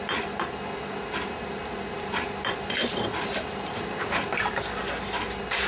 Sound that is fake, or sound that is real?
real